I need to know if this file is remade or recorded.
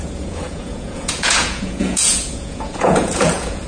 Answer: remade